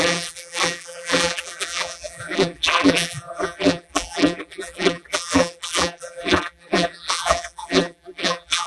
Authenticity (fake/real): fake